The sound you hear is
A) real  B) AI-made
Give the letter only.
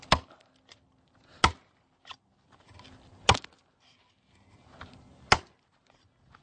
A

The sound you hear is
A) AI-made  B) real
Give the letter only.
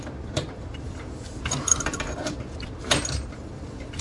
A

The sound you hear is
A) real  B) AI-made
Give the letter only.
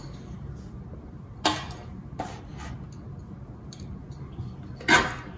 A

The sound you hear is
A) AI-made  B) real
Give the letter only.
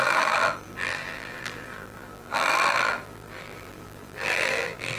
A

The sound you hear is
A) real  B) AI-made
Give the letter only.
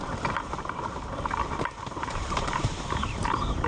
B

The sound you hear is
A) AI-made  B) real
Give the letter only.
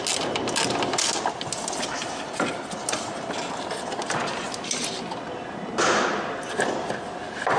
B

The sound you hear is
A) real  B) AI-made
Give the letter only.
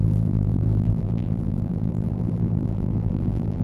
B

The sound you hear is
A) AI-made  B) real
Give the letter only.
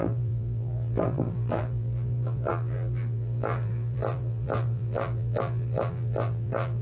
A